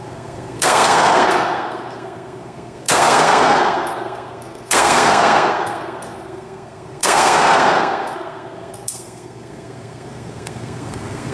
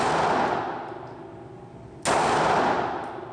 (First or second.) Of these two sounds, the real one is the second